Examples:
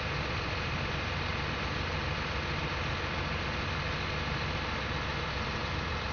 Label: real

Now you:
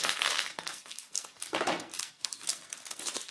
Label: fake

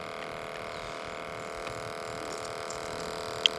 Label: real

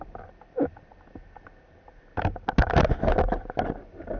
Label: real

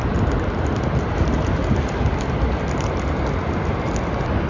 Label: real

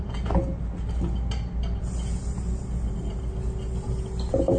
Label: real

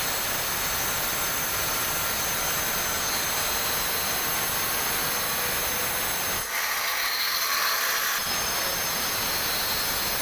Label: real